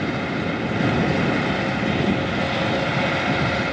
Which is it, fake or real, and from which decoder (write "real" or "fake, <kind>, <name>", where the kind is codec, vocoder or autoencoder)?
real